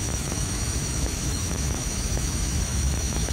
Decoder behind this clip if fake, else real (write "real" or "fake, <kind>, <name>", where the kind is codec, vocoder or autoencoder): fake, autoencoder, DAC-VAE